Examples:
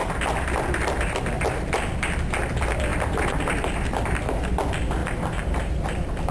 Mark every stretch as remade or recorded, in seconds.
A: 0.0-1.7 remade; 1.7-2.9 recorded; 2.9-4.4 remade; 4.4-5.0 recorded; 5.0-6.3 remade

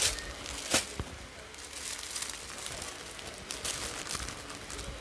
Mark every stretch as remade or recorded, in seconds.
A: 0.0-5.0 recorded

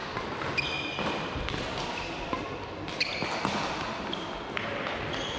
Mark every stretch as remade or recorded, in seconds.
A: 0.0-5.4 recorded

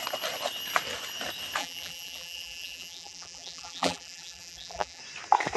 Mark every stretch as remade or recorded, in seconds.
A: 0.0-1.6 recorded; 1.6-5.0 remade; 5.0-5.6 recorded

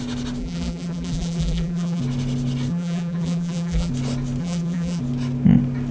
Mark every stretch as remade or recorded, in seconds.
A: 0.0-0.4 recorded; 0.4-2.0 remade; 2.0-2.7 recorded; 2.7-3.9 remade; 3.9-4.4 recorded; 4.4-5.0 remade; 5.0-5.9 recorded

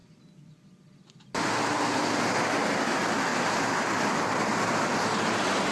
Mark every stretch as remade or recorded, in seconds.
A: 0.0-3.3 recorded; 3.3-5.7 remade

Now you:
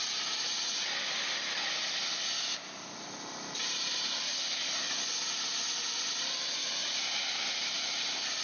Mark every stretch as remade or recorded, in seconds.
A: 0.0-6.8 recorded; 6.8-8.4 remade

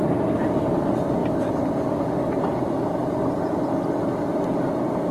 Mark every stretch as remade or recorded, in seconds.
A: 0.0-5.1 recorded